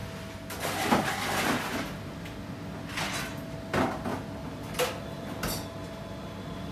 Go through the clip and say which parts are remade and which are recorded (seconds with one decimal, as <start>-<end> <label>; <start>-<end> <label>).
0.0-6.7 recorded